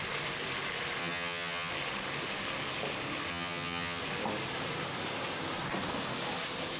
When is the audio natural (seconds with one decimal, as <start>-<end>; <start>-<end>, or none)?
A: 0.0-1.0; 1.7-3.3; 4.0-6.8